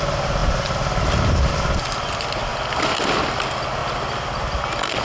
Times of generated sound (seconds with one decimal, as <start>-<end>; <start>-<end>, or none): 0.4-1.5